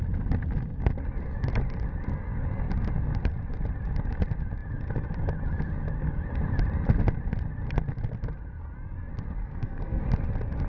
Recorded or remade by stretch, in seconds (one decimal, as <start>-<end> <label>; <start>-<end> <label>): 0.0-9.4 recorded; 9.4-10.0 remade; 10.0-10.7 recorded